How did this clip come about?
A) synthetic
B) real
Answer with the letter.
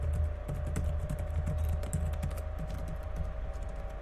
B